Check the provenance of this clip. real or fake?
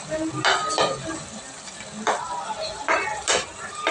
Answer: real